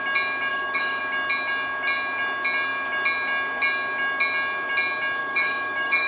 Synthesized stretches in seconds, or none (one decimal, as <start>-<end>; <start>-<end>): 0.5-1.0; 5.2-6.1